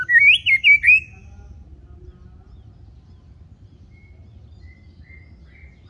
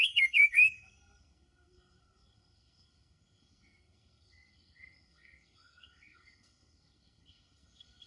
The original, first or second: first